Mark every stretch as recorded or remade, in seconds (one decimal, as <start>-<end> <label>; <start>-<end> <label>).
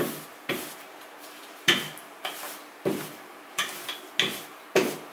0.0-0.5 recorded; 0.5-3.6 remade; 3.6-5.1 recorded